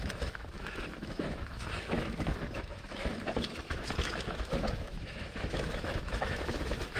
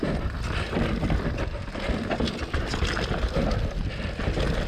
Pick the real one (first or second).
second